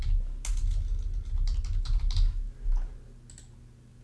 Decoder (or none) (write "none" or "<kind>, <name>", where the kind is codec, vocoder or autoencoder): none